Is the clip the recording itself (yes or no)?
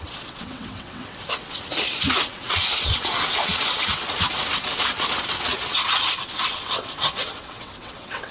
no